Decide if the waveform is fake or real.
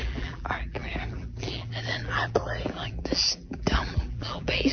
fake